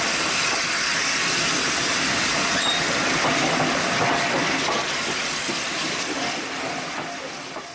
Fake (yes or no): no